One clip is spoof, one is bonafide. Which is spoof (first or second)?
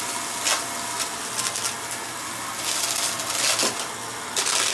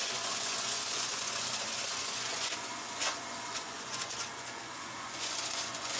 second